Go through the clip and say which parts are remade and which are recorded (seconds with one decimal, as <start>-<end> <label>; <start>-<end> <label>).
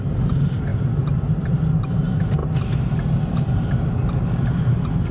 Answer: 0.0-5.1 recorded